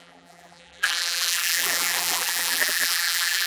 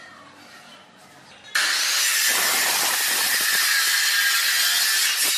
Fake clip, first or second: first